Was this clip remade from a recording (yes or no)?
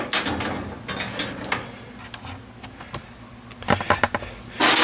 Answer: no